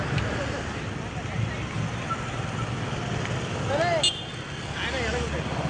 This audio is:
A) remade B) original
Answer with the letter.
B